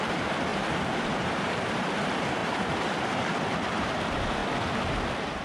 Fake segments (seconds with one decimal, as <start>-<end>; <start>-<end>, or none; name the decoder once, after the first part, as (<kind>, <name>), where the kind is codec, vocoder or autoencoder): 0.5-1.7 (vocoder, BigVGAN v2)